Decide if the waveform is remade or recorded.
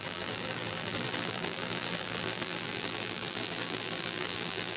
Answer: remade